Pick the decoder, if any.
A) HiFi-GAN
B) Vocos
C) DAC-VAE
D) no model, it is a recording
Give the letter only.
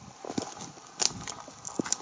D